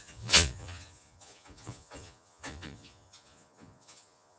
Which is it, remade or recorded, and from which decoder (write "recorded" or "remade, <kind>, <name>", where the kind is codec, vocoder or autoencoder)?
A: remade, vocoder, Vocos